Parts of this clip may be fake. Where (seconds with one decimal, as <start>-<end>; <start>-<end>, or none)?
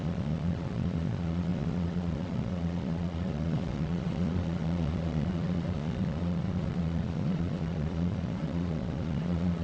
0.0-9.6